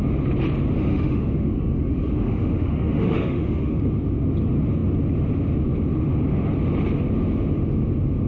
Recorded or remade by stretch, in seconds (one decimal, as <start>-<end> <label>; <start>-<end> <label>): 0.0-0.9 recorded; 0.9-3.8 remade; 3.8-8.3 recorded